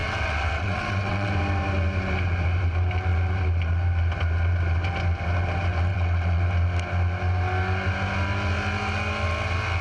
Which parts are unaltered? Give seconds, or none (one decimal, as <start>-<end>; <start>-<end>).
1.3-5.9; 6.4-9.8